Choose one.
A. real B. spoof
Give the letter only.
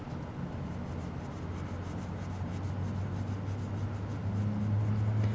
A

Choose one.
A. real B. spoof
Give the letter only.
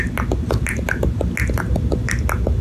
A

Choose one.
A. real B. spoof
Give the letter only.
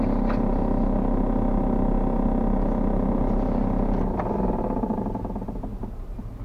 A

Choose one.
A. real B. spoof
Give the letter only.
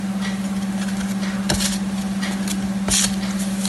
A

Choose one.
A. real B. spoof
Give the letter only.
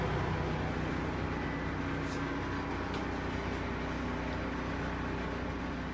A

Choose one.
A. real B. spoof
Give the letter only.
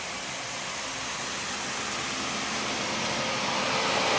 A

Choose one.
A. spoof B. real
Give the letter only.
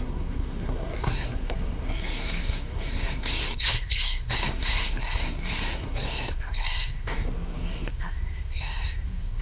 A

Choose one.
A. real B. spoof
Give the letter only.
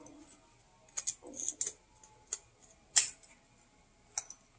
A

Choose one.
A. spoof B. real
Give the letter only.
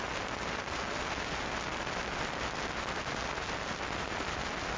B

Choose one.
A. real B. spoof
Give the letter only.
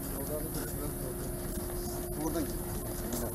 A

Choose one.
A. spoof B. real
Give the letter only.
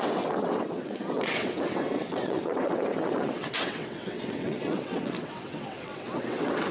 A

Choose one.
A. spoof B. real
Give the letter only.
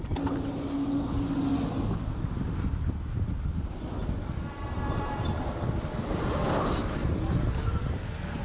B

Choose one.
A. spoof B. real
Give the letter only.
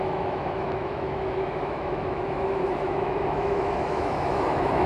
A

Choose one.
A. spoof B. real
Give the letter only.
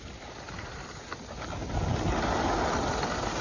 B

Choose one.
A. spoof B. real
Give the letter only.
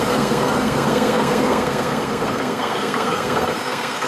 A